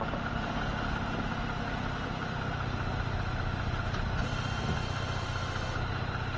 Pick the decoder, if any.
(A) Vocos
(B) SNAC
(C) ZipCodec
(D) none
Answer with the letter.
D